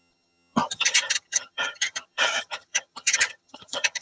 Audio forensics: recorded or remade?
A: remade